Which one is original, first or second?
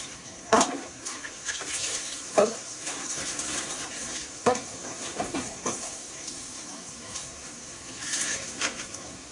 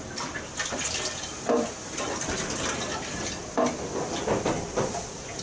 second